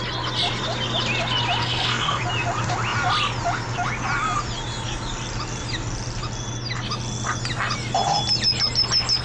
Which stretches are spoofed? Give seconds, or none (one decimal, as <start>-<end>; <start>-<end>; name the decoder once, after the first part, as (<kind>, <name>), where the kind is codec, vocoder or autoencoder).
1.6-2.2 (codec, SNAC)